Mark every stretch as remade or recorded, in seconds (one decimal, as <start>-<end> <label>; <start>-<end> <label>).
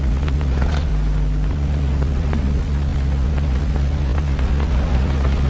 0.0-0.9 remade; 0.9-1.5 recorded; 1.5-5.5 remade